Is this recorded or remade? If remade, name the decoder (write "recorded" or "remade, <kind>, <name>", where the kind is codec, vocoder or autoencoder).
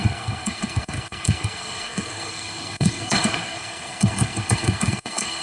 remade, codec, SNAC